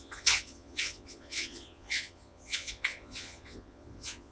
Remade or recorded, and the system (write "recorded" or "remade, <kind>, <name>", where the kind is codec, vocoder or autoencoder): remade, vocoder, Vocos